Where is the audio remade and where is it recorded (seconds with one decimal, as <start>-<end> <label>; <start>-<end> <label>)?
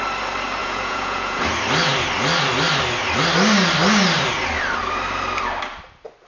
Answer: 0.0-0.6 recorded; 0.6-1.4 remade; 1.4-6.3 recorded